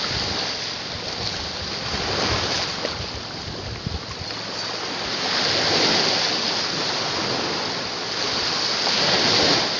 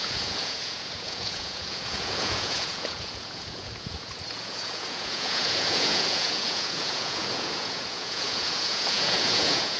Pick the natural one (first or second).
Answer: first